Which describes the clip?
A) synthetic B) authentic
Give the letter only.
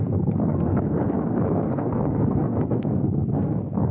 A